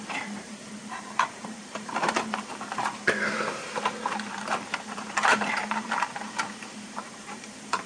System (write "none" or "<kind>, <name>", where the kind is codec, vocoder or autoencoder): vocoder, BigVGAN v2